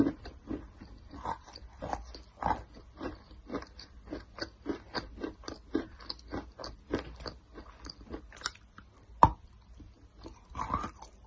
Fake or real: real